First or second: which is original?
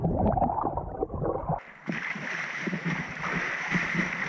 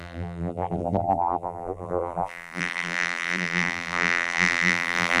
first